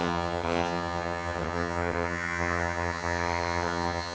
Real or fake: fake